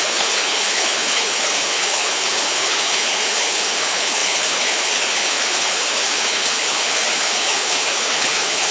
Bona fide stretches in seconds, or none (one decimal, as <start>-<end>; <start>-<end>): none